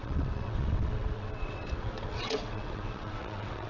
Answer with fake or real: fake